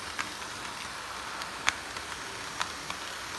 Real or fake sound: real